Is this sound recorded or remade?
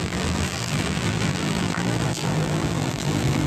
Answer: remade